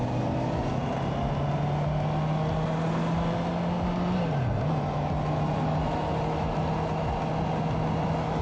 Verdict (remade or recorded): recorded